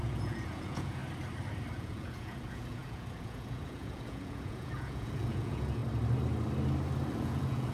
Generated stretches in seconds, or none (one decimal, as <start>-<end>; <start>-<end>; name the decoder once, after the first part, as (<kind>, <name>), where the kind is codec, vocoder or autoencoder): 0.0-1.0 (vocoder, Vocos); 1.7-5.8; 7.1-7.7